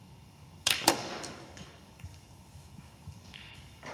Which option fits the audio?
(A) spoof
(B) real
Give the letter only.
A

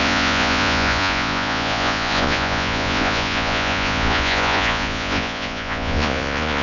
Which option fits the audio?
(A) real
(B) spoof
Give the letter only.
B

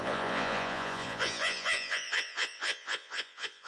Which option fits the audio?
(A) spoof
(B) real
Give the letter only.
A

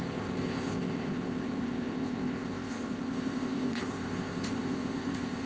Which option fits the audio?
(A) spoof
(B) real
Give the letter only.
A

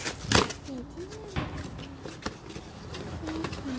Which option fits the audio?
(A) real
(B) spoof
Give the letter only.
A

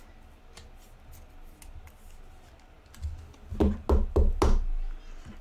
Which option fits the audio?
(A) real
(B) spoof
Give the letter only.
A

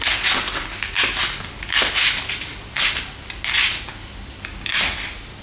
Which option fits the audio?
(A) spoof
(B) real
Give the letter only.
B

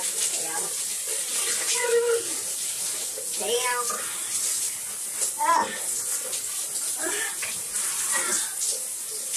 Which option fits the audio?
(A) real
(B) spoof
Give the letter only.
A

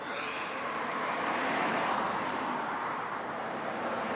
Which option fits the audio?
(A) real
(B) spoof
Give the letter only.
B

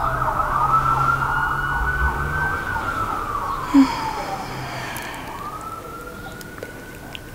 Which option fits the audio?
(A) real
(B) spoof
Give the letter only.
A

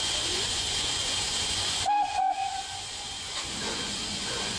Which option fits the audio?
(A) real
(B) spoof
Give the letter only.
B